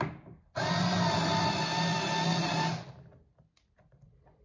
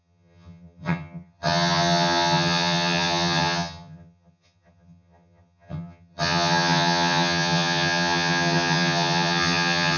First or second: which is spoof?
second